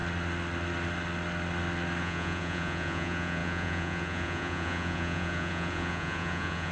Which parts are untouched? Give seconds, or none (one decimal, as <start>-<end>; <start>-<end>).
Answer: 0.0-2.0